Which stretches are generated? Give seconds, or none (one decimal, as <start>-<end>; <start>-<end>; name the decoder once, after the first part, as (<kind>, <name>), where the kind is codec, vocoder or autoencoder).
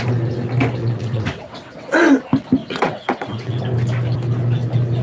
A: 0.8-1.9 (vocoder, WaveNeXt); 2.6-3.6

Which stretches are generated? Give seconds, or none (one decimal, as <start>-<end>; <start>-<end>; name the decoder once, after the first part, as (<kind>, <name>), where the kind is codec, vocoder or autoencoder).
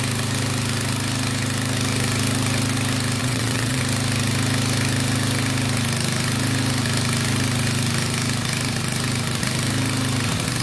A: 3.2-3.8 (vocoder, WaveNeXt)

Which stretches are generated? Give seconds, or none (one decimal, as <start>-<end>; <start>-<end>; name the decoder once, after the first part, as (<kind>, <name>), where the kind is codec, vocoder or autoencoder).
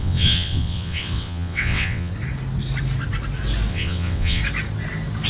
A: 0.0-2.1 (vocoder, WaveNeXt); 3.7-4.4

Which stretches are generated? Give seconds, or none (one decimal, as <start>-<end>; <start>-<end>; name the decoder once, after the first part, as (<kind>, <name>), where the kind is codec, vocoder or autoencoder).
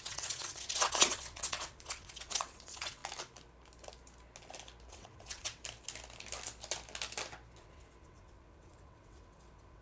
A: 0.0-3.0 (vocoder, WaveNeXt); 4.9-5.6; 7.6-9.8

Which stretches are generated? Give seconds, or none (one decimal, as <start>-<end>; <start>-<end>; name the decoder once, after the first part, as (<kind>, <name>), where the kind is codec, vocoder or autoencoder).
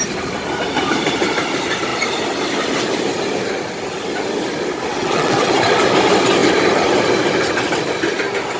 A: 4.9-5.5 (vocoder, WaveNeXt)